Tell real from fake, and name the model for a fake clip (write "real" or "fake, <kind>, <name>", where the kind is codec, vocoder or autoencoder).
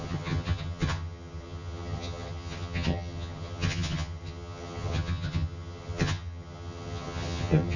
fake, vocoder, HiFi-GAN